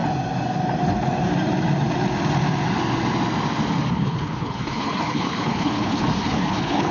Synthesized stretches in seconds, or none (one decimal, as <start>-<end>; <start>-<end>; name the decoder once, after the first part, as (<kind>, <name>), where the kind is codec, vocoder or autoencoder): 3.9-6.9 (codec, HILCodec)